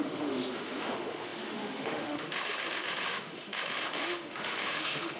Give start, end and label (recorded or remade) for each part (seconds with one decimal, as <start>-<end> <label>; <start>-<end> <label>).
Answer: 0.0-5.2 remade